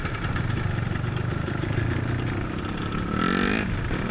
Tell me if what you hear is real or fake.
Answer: real